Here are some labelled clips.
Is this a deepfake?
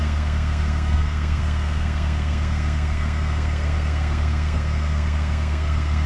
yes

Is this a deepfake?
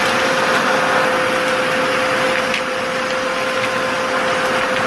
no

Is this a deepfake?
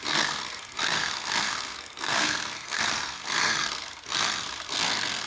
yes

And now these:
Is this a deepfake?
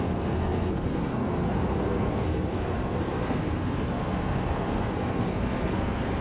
yes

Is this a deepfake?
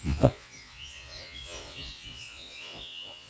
yes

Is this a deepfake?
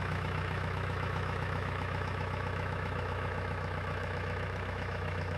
yes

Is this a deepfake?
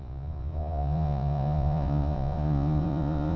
yes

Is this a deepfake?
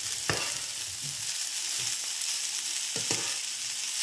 no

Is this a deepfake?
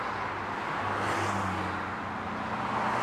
no